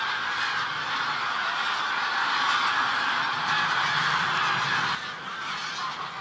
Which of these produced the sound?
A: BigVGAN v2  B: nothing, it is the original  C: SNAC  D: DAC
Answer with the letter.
B